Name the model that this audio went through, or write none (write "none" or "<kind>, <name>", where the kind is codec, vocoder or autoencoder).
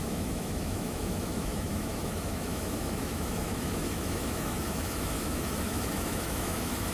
autoencoder, DAC-VAE